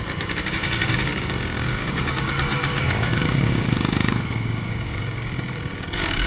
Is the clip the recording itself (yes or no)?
no